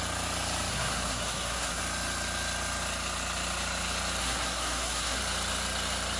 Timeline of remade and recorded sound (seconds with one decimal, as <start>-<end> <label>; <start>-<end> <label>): 0.0-0.7 recorded; 0.7-1.8 remade; 1.8-4.2 recorded; 4.2-5.2 remade; 5.2-6.2 recorded